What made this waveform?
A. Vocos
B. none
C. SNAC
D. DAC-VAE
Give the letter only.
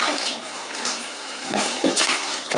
C